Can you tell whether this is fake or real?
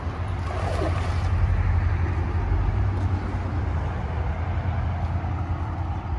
real